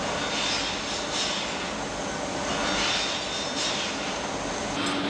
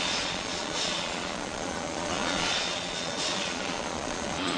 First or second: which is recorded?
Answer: first